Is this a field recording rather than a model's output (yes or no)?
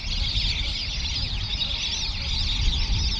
yes